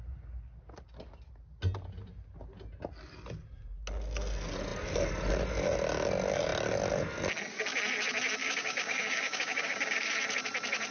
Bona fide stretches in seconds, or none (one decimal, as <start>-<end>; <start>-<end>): 0.0-8.4; 10.1-10.9